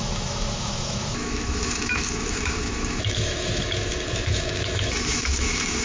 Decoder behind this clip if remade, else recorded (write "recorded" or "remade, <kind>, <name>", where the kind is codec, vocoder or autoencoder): remade, autoencoder, DAC-VAE